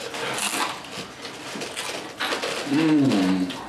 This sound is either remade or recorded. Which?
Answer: recorded